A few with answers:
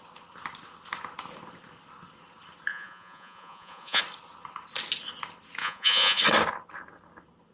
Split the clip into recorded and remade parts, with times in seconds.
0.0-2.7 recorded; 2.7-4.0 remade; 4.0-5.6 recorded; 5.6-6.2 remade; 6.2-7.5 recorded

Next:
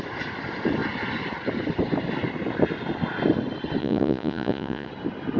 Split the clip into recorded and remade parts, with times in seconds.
0.0-3.8 recorded; 3.8-4.9 remade; 4.9-5.4 recorded

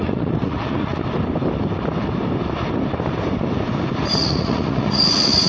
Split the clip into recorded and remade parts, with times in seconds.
0.0-0.9 remade; 0.9-4.2 recorded; 4.2-5.5 remade

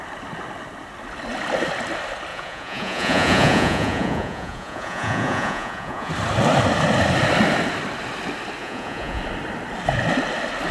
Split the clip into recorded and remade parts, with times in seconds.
0.0-2.3 recorded; 2.3-6.1 remade; 6.1-8.6 recorded; 8.6-9.2 remade; 9.2-10.7 recorded